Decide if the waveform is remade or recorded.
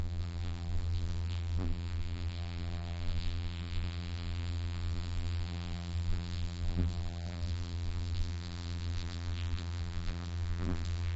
remade